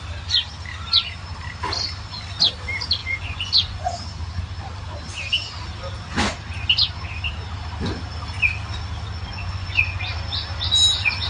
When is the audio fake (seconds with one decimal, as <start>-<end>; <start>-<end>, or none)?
3.0-3.9; 9.2-10.1